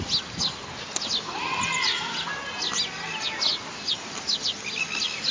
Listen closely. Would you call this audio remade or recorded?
recorded